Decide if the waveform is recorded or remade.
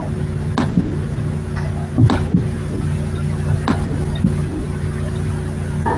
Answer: recorded